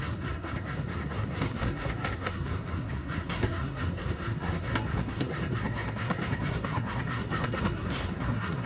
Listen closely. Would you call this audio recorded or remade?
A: remade